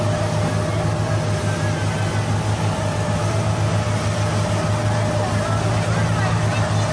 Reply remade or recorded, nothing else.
recorded